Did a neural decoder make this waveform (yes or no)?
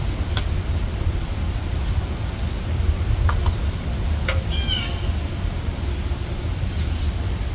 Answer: no